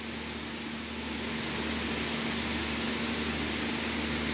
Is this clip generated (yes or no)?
no